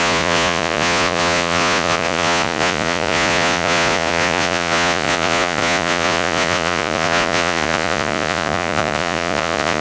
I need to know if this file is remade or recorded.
remade